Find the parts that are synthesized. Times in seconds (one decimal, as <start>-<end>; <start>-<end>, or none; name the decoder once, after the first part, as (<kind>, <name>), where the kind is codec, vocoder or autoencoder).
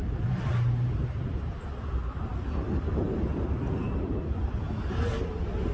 0.0-1.4 (vocoder, BigVGAN v2)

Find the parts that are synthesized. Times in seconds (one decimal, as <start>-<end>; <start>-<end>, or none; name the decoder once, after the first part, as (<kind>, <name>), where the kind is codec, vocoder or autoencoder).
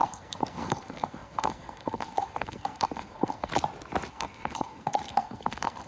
0.0-3.5 (codec, SNAC); 4.1-5.9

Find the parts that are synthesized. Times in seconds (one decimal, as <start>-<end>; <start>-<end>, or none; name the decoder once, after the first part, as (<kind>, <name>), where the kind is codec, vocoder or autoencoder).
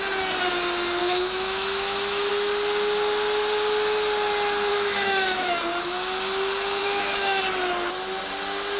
1.0-2.3 (autoencoder, DAC-VAE); 4.7-5.5; 6.8-7.4